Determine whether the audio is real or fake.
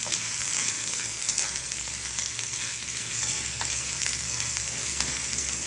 fake